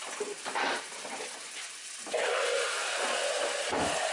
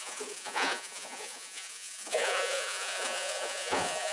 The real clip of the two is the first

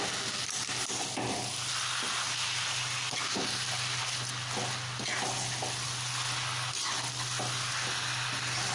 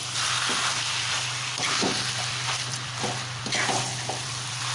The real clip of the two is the first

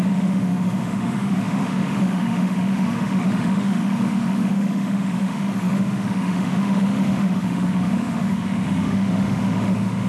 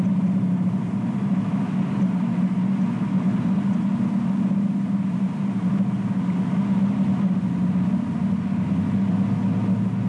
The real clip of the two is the second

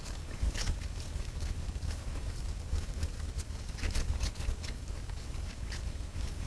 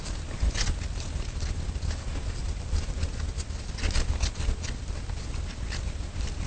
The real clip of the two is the second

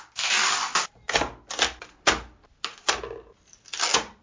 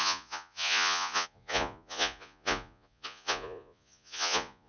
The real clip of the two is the first